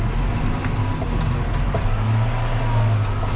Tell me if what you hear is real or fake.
real